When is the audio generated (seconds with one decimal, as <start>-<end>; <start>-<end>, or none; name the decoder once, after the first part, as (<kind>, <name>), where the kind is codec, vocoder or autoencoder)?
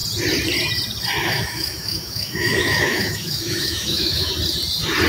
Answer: 1.2-4.3 (autoencoder, DAC-VAE)